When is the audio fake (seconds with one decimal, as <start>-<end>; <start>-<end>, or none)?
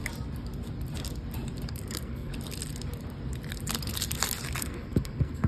1.7-2.3; 4.6-5.5